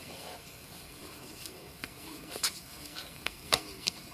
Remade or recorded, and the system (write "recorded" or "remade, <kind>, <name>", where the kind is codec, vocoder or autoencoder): remade, codec, SNAC